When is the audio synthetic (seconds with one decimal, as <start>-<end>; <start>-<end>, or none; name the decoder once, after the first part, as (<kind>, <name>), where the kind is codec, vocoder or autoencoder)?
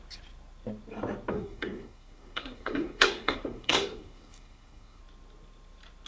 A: 1.3-5.0 (codec, SNAC)